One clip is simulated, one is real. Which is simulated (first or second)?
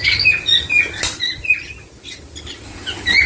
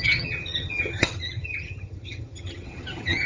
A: second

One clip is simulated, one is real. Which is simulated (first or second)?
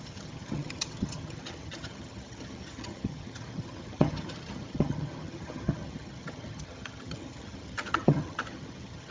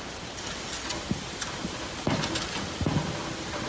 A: first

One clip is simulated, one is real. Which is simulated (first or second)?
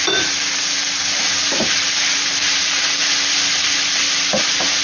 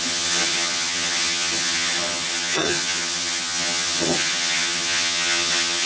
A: second